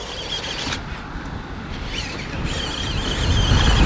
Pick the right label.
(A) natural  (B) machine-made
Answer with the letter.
A